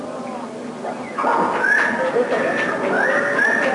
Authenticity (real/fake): real